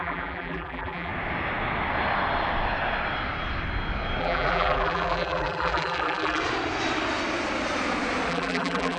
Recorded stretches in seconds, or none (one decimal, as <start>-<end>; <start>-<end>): 1.1-4.2; 6.4-8.3